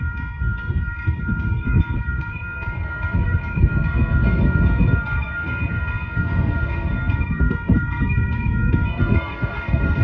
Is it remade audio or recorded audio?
remade